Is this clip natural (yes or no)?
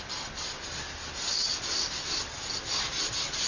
yes